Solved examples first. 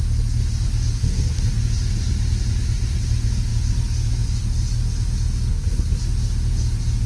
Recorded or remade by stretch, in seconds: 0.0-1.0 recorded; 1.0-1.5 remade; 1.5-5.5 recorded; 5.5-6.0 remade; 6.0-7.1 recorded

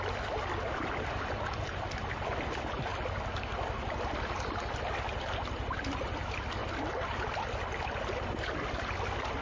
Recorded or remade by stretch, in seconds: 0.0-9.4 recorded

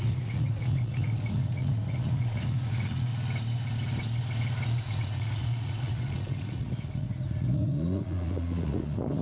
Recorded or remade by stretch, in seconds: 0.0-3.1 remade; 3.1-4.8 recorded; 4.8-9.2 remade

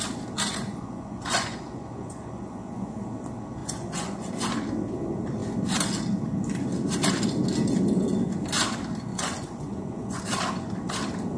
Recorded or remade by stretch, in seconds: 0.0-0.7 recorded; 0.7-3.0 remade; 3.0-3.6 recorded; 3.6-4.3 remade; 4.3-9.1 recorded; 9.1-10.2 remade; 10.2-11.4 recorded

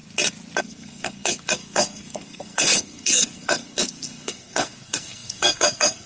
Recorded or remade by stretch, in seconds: 0.0-0.6 recorded; 0.6-6.1 remade

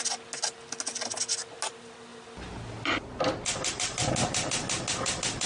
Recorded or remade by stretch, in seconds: 0.0-5.5 recorded

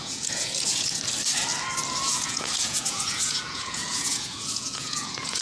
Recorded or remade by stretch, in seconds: 0.0-1.0 remade; 1.0-2.1 recorded; 2.1-5.4 remade